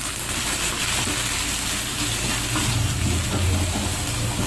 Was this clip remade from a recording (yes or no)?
no